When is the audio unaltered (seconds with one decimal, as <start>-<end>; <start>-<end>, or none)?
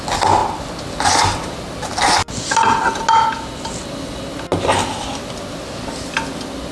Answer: 0.0-6.7